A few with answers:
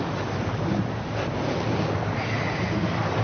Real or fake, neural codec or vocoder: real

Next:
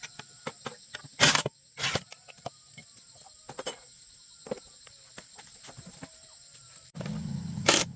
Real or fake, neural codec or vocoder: real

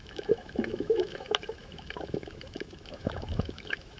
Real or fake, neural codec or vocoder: fake, autoencoder, DAC-VAE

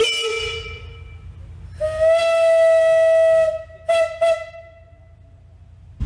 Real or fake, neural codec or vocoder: real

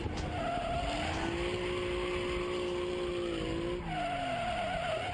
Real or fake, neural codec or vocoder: real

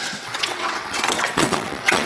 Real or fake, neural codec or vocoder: fake, vocoder, WaveNeXt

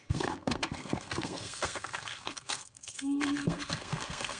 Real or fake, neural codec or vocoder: fake, codec, SNAC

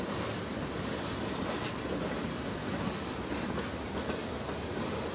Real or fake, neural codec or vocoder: real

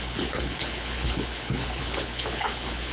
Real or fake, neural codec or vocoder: fake, codec, HILCodec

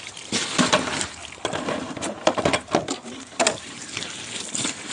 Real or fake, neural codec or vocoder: real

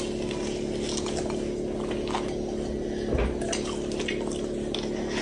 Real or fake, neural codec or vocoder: real